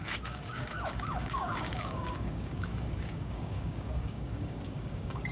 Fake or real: fake